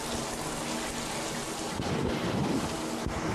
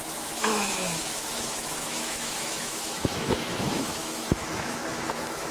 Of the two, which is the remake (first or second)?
second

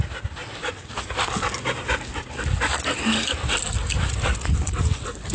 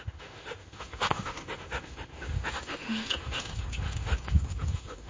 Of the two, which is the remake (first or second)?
second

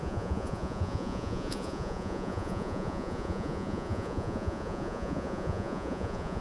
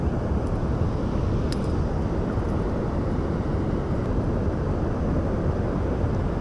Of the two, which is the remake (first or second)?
first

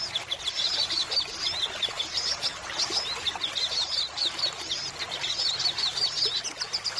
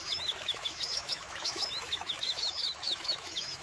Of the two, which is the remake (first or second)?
second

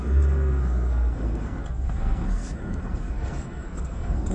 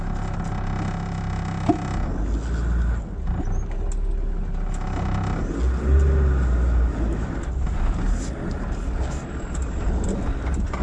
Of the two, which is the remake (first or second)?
first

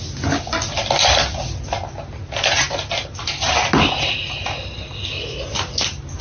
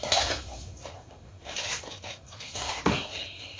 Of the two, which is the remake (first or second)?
second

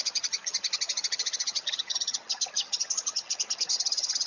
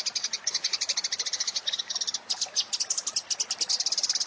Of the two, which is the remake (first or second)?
first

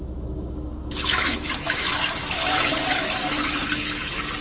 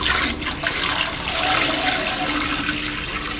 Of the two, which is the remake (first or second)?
first